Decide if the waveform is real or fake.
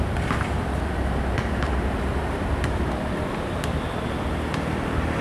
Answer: fake